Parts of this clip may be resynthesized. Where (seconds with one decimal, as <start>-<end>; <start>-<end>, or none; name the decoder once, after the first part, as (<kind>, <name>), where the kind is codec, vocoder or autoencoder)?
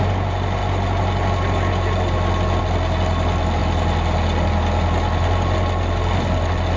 none